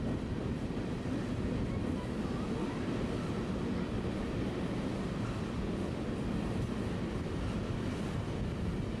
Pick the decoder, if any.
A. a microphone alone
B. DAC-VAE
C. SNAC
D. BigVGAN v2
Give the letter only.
A